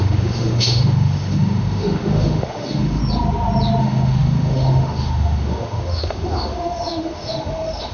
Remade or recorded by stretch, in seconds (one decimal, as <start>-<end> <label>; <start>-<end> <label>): 0.0-3.0 remade; 3.0-3.8 recorded; 3.8-7.9 remade